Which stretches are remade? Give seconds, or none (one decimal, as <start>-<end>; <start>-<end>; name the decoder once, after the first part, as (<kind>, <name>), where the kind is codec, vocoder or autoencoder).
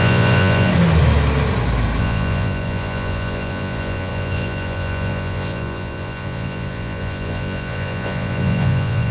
0.0-0.7 (vocoder, Vocos); 2.0-9.1